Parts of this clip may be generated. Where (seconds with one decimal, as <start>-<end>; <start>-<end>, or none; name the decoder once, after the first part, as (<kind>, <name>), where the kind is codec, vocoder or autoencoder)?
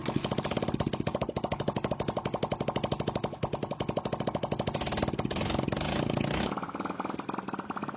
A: 1.1-1.9 (codec, DAC)